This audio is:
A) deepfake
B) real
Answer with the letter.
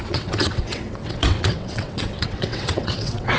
A